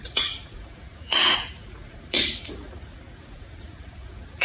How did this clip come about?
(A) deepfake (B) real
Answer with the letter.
A